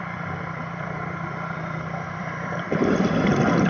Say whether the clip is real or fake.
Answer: fake